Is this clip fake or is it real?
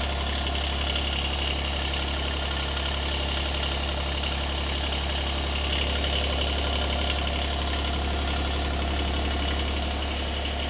real